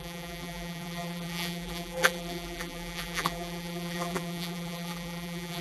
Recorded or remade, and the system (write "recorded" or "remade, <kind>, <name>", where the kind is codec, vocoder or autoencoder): remade, vocoder, BigVGAN v2